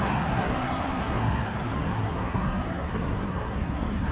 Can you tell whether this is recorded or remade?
remade